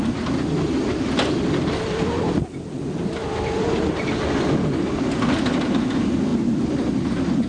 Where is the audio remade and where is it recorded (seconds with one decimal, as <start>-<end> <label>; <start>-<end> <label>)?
0.0-7.5 recorded